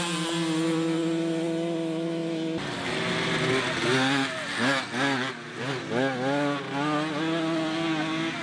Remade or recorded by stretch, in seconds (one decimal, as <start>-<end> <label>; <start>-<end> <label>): 0.0-8.4 recorded

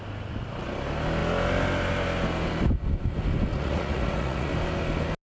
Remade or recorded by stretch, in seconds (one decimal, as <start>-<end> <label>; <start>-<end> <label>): 0.0-3.5 recorded; 3.5-4.5 remade; 4.5-5.2 recorded

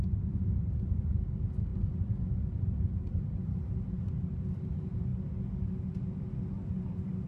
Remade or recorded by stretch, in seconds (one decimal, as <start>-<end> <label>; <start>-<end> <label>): 0.0-7.3 recorded